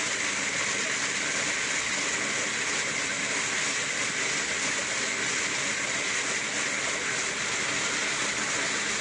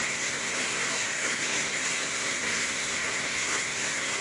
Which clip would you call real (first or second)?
first